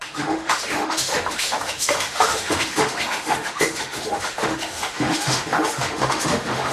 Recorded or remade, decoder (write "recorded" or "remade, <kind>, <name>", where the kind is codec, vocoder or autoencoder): remade, autoencoder, DAC-VAE